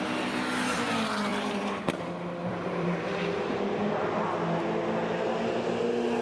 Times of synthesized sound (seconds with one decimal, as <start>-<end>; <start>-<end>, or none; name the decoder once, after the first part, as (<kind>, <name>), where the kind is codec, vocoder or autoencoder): 1.3-2.0 (vocoder, BigVGAN v2); 2.4-3.7